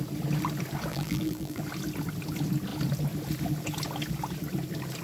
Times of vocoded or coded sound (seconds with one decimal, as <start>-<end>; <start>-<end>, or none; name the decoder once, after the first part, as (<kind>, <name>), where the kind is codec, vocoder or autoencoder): 0.9-1.6 (vocoder, BigVGAN v2)